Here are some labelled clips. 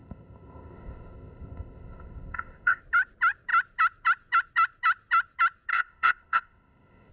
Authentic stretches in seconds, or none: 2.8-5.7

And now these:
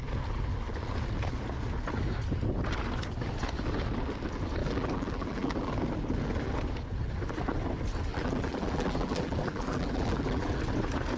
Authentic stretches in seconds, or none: 0.0-4.6; 5.7-8.1; 10.6-11.2

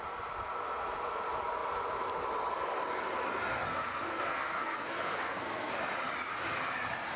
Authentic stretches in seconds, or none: 0.0-3.7; 5.7-7.2